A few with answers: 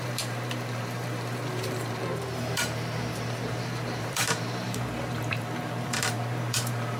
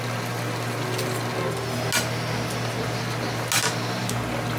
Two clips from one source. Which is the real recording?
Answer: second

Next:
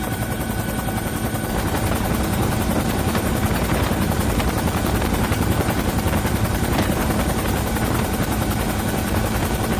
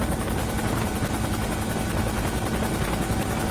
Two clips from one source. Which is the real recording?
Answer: second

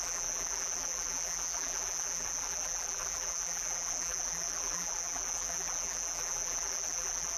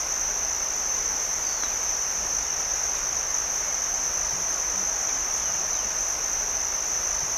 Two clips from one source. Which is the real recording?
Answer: second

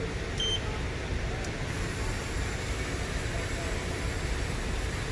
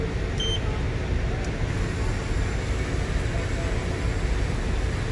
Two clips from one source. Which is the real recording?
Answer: second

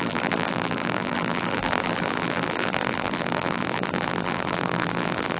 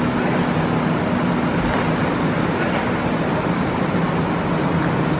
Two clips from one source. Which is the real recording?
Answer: second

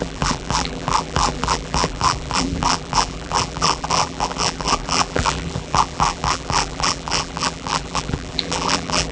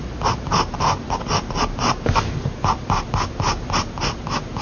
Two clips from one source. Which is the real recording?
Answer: second